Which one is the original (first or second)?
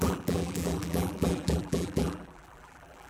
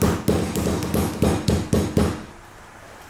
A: second